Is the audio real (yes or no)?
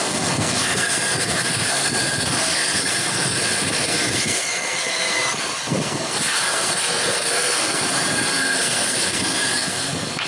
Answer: no